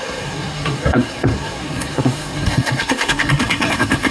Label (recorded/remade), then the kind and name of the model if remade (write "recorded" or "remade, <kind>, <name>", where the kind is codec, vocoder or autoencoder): remade, codec, SNAC